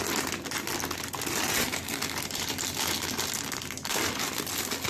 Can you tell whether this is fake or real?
real